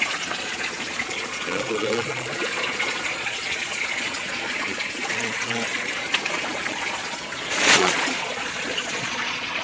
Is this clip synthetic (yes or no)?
yes